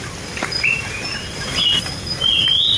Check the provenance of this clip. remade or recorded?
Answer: recorded